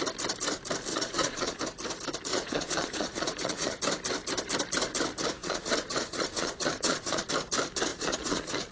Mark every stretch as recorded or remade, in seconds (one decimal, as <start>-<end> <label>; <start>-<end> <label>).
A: 0.0-0.9 recorded; 0.9-1.6 remade; 1.6-2.3 recorded; 2.3-3.8 remade; 3.8-5.4 recorded; 5.4-7.3 remade; 7.3-7.9 recorded; 7.9-8.7 remade